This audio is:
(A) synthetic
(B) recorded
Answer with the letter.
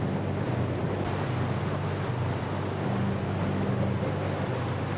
B